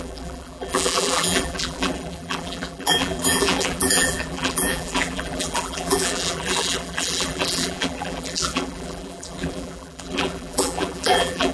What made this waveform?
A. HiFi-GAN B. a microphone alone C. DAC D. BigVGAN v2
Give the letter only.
D